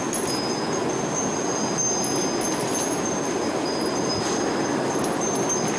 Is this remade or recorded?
recorded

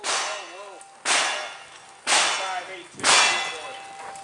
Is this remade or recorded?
recorded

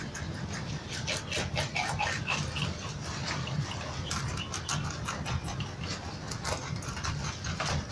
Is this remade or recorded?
recorded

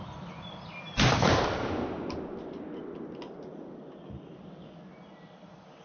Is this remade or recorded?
recorded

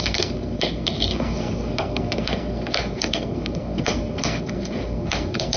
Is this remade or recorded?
remade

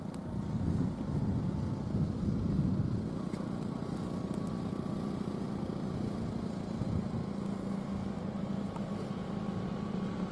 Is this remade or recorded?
recorded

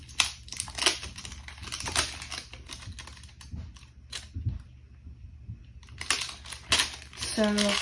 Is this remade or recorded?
recorded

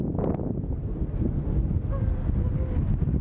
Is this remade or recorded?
recorded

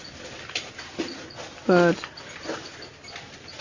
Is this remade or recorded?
recorded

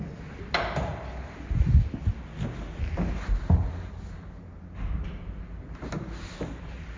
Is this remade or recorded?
recorded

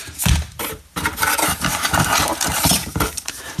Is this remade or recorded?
remade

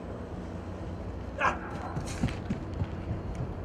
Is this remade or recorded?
recorded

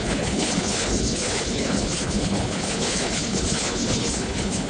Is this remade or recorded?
remade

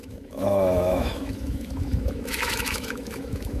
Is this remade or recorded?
remade